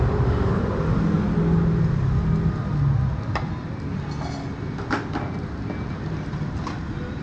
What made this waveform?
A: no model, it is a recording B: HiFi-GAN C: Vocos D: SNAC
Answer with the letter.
A